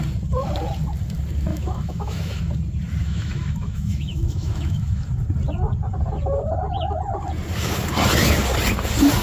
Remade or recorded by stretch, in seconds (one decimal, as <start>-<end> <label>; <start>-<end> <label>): 0.0-1.5 recorded; 1.5-2.4 remade; 2.4-3.0 recorded; 3.0-5.1 remade; 5.1-9.2 recorded